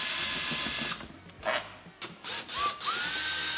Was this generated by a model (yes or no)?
no